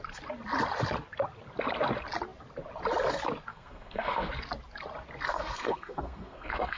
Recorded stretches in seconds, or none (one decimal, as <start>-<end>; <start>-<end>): 0.0-3.5; 4.3-5.3